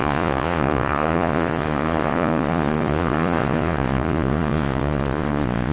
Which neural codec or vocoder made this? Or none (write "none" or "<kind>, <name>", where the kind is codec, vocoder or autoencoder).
vocoder, Vocos